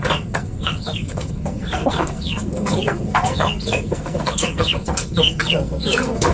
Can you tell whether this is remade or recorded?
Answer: remade